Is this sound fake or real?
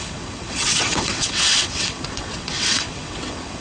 fake